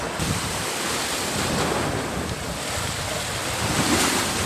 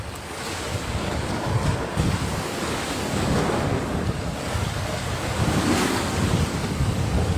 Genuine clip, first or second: first